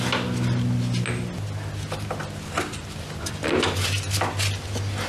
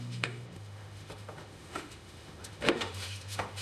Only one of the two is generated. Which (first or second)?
second